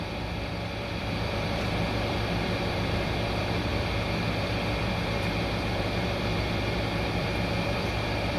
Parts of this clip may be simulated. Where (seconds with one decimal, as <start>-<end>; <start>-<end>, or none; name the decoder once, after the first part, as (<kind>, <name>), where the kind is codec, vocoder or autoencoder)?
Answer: 0.0-8.4 (vocoder, BigVGAN v2)